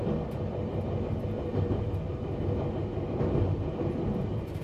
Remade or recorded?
recorded